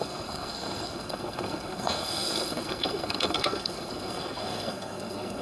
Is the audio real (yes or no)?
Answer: no